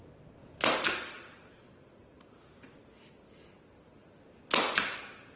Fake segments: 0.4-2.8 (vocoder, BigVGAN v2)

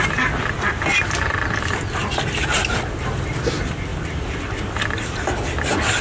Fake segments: none

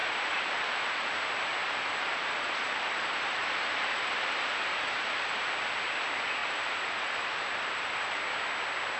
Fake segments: 0.0-1.1 (vocoder, BigVGAN v2); 1.6-5.4; 6.4-8.2